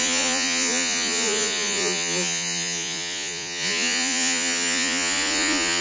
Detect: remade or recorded remade